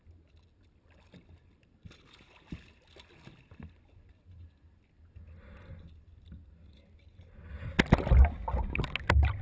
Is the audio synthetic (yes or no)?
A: no